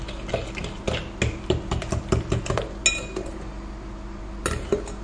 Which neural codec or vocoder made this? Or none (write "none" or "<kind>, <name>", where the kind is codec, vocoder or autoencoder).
none